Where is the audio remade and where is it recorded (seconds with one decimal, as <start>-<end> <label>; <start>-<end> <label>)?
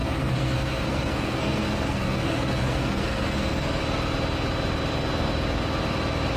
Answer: 0.0-3.8 remade; 3.8-6.4 recorded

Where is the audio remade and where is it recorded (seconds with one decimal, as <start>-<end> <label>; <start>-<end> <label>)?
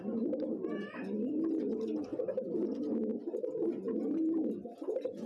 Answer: 0.0-5.3 recorded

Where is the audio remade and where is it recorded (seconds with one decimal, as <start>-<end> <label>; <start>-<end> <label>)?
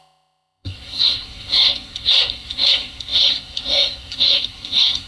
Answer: 0.0-5.1 remade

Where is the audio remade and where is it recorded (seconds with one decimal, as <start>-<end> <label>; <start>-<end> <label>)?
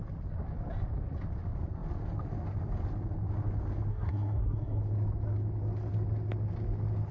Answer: 0.0-3.9 recorded; 3.9-4.8 remade; 4.8-7.1 recorded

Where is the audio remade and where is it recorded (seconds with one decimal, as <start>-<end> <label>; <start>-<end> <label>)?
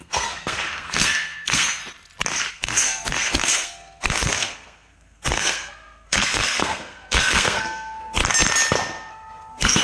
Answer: 0.0-1.8 remade; 1.8-2.5 recorded; 2.5-8.2 remade; 8.2-9.1 recorded; 9.1-9.8 remade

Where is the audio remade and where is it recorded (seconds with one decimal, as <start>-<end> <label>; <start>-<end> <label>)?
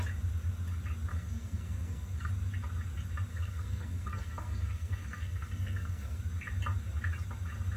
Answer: 0.0-1.1 recorded; 1.1-2.3 remade; 2.3-3.3 recorded; 3.3-6.2 remade; 6.2-7.8 recorded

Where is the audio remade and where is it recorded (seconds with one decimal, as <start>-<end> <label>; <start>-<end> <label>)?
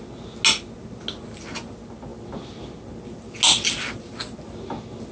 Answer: 0.0-5.1 recorded